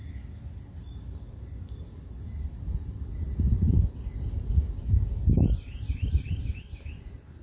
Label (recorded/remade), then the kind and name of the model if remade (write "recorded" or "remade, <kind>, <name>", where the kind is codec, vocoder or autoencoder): recorded